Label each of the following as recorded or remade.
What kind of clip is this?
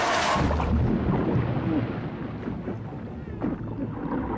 recorded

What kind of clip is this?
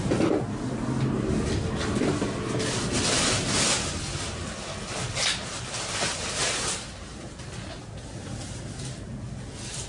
recorded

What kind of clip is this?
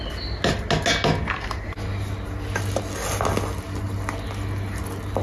recorded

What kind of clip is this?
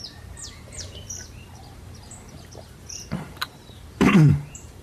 remade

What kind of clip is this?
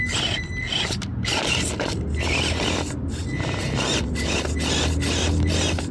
recorded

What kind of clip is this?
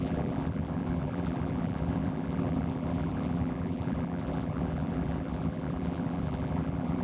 remade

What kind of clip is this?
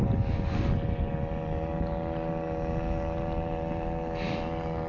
recorded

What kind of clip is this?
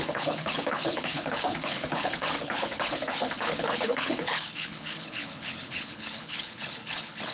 remade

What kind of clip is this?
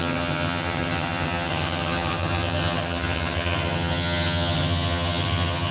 remade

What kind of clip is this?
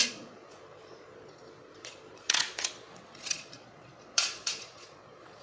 remade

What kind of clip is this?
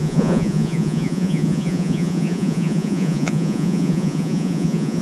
remade